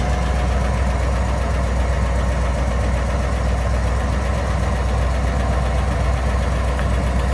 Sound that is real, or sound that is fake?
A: real